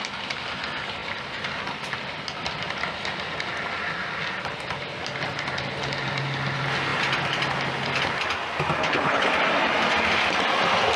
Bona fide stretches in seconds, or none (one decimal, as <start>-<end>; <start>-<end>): 0.0-8.8; 9.3-11.0